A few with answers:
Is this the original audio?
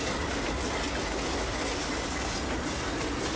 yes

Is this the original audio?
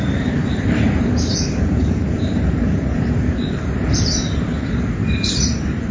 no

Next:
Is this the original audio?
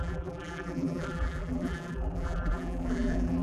no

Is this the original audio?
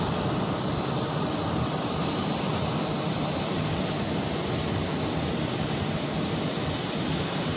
yes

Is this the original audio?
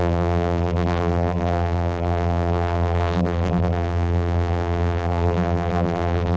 no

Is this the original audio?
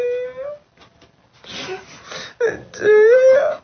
yes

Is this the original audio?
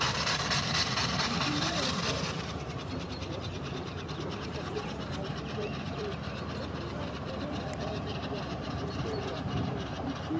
no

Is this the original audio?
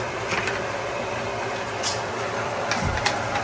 no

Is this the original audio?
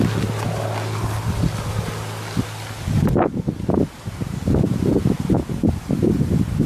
yes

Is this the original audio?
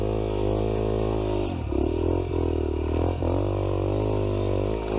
yes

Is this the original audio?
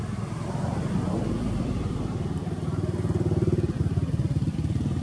no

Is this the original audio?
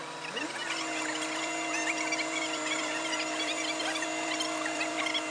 no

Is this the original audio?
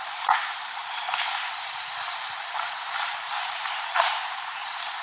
no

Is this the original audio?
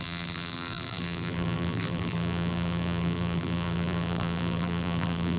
no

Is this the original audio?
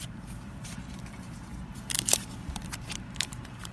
no